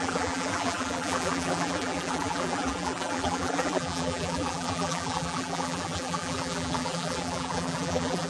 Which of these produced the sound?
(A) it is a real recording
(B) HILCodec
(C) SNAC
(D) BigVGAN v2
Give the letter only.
D